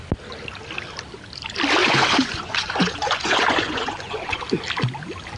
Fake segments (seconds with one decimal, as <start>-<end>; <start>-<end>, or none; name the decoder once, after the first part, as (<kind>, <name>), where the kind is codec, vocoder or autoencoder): 1.8-4.4 (vocoder, Vocos)